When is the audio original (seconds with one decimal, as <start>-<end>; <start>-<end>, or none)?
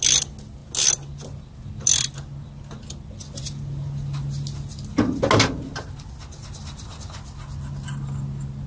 0.0-8.7